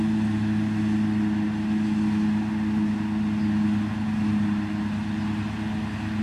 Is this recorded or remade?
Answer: recorded